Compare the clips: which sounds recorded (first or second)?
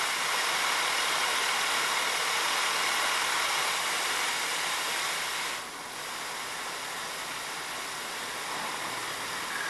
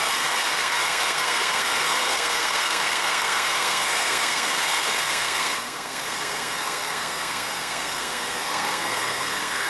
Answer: first